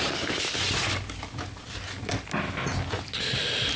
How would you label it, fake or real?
real